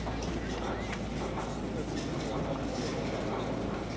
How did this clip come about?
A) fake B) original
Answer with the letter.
B